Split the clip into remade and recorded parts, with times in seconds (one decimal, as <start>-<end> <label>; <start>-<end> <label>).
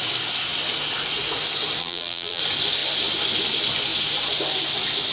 0.0-1.8 recorded; 1.8-2.4 remade; 2.4-5.1 recorded